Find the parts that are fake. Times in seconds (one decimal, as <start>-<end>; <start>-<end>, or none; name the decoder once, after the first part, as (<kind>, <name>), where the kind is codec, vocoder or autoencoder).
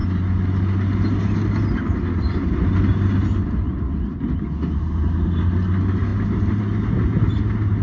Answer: none